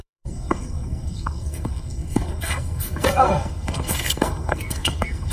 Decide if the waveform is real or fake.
fake